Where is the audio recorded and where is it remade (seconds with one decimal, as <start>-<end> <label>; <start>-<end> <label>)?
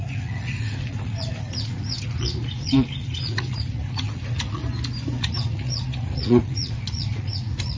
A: 0.0-4.6 remade; 4.6-5.2 recorded; 5.2-7.8 remade